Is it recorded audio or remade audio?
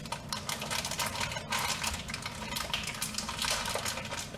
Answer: recorded